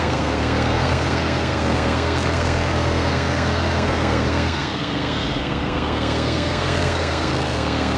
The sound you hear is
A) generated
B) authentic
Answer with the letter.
A